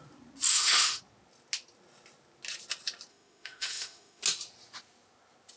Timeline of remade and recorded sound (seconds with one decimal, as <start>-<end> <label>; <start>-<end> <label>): 0.0-0.5 recorded; 0.5-1.0 remade; 1.0-3.1 recorded; 3.1-4.2 remade; 4.2-5.6 recorded